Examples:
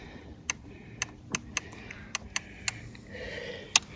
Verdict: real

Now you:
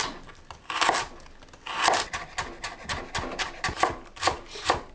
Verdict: real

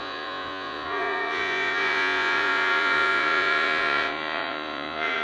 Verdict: fake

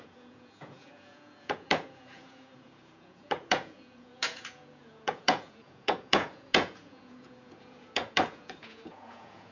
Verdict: fake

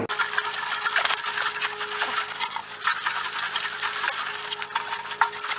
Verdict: real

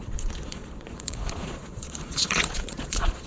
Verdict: fake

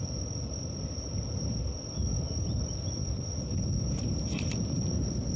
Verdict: real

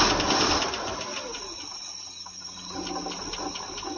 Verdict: real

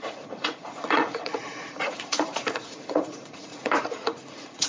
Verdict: fake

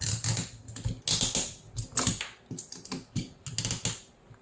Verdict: real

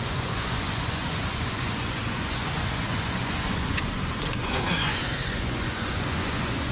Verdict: fake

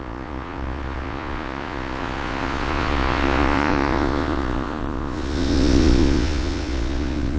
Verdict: fake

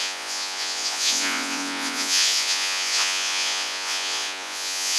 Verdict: fake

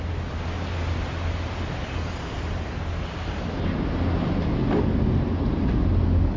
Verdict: real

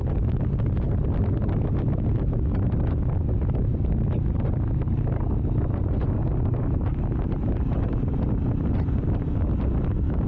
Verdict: real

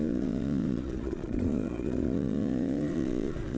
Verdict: fake